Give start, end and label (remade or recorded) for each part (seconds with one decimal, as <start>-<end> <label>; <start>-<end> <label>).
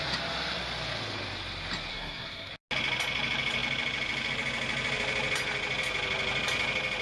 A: 0.0-1.9 recorded; 1.9-2.5 remade; 2.5-7.0 recorded